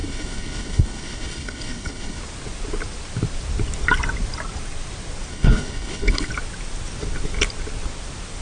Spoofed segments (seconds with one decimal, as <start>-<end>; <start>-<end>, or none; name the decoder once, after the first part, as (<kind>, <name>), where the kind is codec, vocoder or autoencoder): 0.0-2.2 (codec, HILCodec); 5.3-6.3